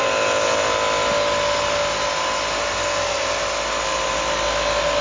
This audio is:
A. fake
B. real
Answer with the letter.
B